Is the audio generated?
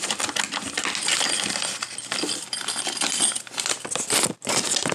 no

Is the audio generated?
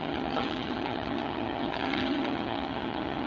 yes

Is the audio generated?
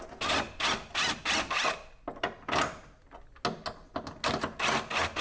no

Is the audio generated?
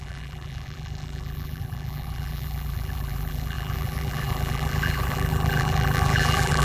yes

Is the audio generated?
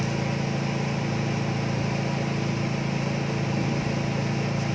no